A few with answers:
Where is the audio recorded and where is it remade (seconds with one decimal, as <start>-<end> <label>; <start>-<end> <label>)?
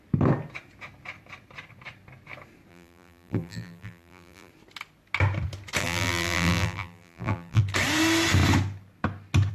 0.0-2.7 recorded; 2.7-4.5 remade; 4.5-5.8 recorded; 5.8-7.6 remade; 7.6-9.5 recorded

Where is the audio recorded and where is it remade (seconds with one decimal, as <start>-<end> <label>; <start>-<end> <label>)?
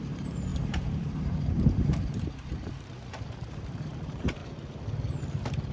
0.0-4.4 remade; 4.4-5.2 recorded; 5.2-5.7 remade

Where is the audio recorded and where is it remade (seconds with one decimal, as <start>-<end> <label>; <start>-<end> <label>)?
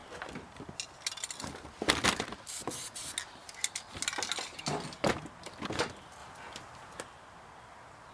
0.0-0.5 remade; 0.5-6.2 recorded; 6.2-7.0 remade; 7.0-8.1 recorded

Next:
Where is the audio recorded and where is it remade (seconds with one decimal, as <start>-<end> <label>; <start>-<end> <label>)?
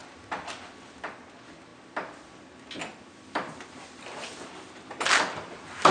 0.0-0.5 remade; 0.5-2.9 recorded; 2.9-4.1 remade; 4.1-5.9 recorded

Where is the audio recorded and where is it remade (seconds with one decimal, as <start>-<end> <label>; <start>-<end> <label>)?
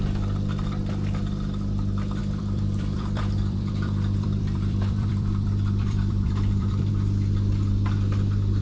0.0-2.2 recorded; 2.2-6.9 remade; 6.9-8.6 recorded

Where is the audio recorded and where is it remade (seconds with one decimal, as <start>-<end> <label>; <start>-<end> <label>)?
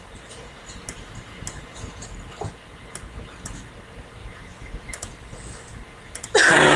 0.0-4.2 recorded; 4.2-6.8 remade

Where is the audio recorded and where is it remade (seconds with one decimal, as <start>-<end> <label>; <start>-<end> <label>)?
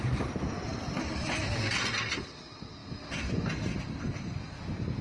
0.0-5.0 recorded